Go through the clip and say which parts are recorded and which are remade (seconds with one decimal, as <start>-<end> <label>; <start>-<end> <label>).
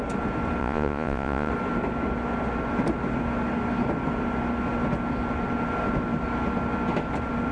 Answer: 0.0-0.6 recorded; 0.6-1.5 remade; 1.5-7.5 recorded